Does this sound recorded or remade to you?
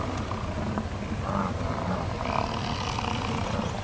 recorded